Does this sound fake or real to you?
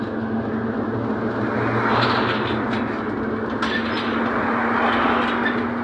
real